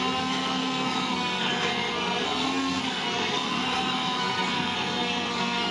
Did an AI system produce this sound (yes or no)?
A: yes